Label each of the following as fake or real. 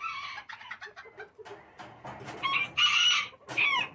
real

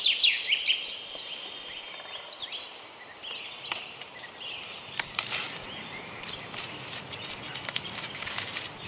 fake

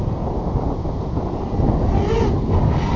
real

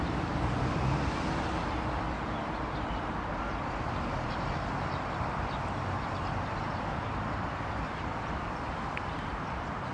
fake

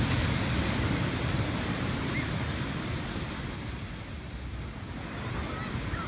real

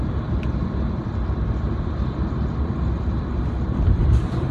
fake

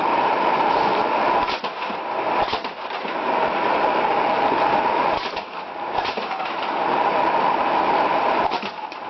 fake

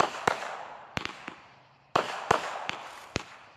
fake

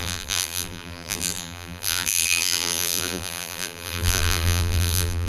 fake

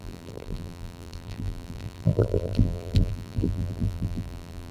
fake